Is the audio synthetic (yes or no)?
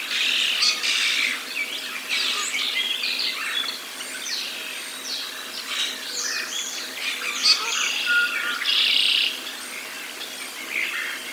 no